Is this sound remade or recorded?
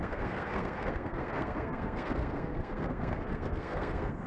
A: remade